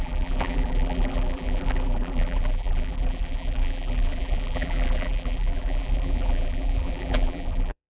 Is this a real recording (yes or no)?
no